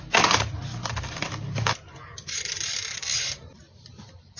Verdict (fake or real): real